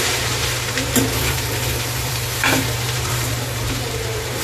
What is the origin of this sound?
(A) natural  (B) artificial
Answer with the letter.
B